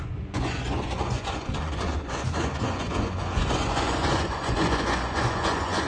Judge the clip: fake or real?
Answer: fake